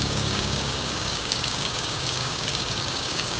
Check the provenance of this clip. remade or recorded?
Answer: remade